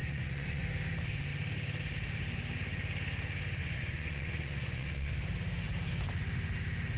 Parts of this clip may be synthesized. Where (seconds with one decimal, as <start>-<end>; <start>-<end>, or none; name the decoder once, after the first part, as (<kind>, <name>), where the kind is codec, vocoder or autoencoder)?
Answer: 0.0-0.6 (vocoder, Vocos); 3.6-5.1